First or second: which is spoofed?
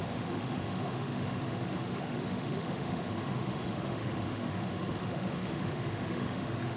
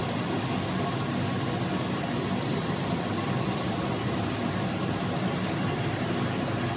first